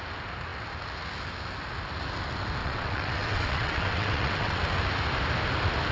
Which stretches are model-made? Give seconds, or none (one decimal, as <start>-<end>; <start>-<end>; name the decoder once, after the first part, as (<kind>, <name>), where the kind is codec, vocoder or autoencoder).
2.6-4.6 (vocoder, WaveNeXt)